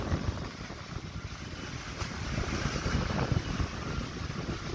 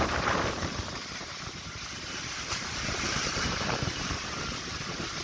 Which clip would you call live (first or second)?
first